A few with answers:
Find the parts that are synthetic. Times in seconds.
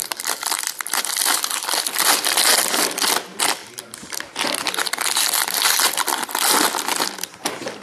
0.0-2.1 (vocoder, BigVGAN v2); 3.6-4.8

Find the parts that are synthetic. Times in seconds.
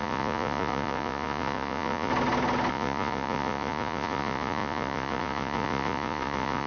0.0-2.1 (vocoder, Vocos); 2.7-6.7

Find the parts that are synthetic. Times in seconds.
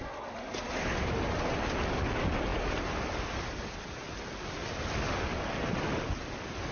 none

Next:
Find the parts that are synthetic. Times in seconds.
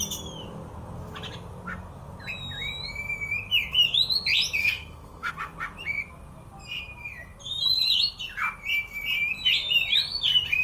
4.6-5.3 (codec, SNAC)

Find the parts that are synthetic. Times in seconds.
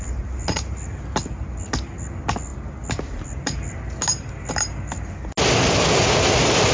none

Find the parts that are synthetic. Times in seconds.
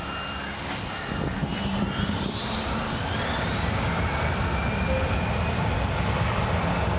1.5-3.0 (vocoder, BigVGAN v2)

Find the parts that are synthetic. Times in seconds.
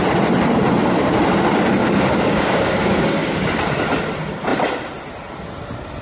1.8-3.6 (codec, DAC)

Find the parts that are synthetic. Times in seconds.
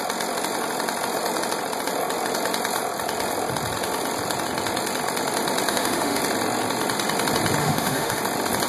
5.7-6.2 (autoencoder, DAC-VAE); 7.6-8.2